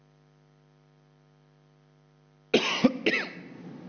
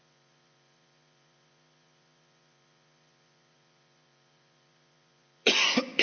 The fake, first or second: second